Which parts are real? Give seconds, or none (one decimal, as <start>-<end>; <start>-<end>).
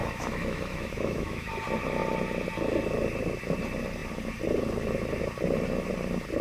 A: 1.5-6.4